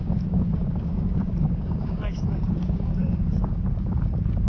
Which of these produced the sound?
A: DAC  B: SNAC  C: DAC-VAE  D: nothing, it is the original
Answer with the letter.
A